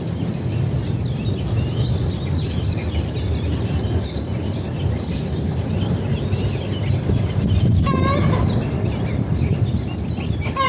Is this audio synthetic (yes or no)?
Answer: no